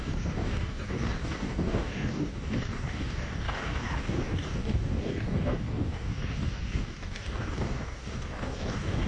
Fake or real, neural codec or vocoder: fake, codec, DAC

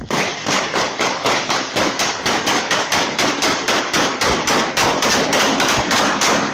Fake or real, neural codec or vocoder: fake, codec, DAC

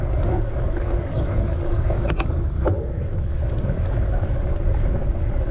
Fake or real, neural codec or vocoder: fake, codec, DAC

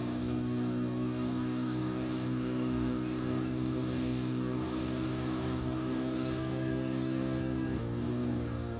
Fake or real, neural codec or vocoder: fake, codec, DAC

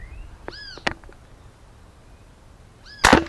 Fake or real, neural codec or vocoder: real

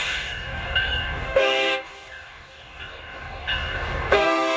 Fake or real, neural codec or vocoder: fake, codec, DAC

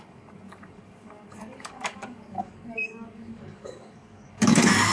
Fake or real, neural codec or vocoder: fake, codec, DAC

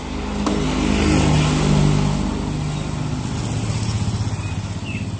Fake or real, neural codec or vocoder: real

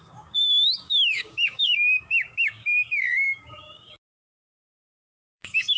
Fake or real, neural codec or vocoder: fake, codec, DAC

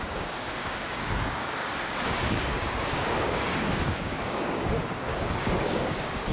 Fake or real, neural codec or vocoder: fake, codec, DAC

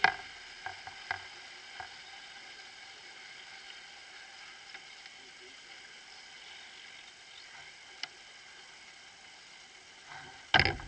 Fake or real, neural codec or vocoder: real